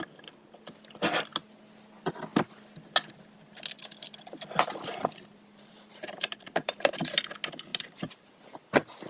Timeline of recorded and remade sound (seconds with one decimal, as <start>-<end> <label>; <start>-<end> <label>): 0.0-5.3 recorded; 5.3-6.9 remade; 6.9-7.7 recorded; 7.7-8.7 remade; 8.7-9.1 recorded